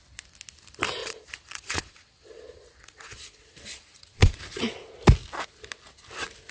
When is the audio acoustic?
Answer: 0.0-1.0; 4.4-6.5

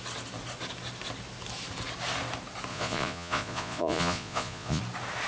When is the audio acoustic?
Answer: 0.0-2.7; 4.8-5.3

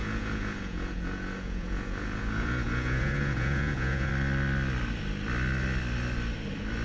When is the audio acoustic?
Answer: 4.1-6.8

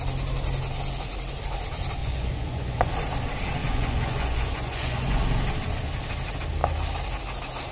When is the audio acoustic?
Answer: 0.0-2.0; 2.9-3.6; 5.2-7.7

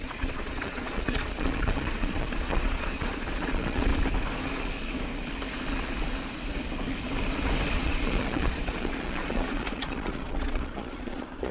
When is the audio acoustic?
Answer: 3.9-7.7

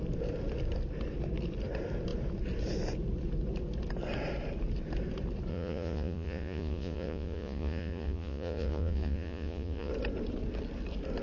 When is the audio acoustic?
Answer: 0.0-5.5; 9.9-11.2

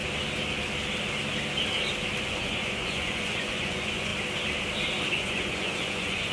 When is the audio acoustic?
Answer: 0.0-2.2; 4.1-5.1

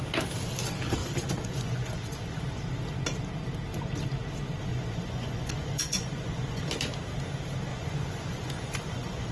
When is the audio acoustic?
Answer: 0.0-1.0; 2.6-4.7; 6.6-7.7